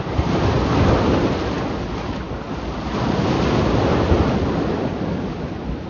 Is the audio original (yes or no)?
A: yes